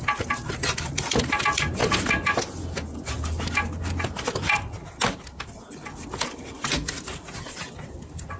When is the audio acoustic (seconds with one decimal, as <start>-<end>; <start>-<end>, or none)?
0.0-8.4